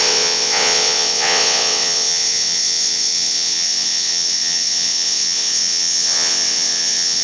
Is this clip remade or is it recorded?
remade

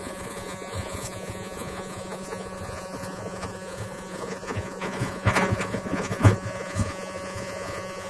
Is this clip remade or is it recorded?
remade